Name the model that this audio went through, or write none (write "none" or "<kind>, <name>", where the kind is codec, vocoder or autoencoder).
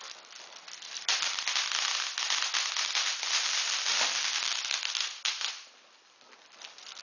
none